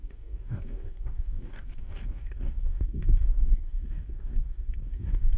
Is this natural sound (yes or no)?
no